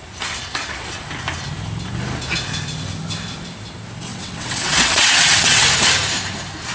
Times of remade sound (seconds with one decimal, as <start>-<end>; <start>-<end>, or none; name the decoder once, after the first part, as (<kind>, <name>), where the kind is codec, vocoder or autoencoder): 4.1-5.7 (vocoder, WaveNeXt)